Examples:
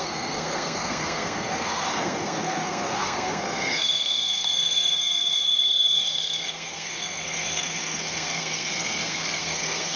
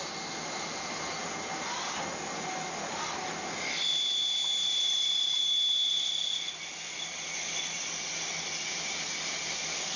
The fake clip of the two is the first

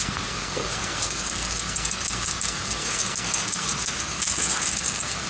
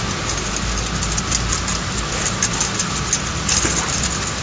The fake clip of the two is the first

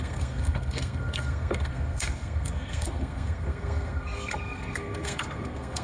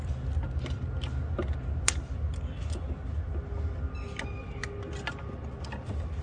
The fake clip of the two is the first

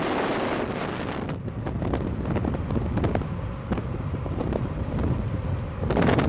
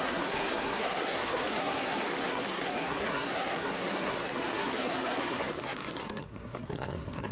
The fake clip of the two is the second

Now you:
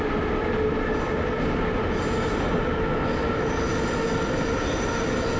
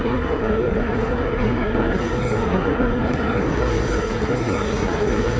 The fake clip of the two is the second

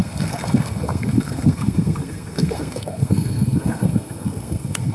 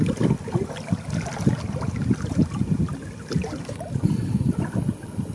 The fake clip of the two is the first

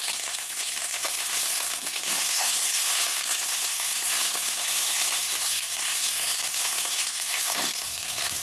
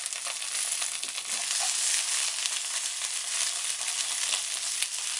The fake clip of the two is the first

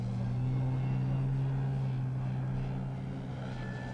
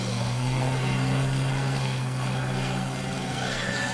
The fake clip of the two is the second